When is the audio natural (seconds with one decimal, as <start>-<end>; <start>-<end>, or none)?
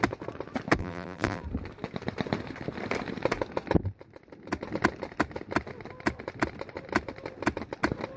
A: 0.0-0.8; 1.4-8.2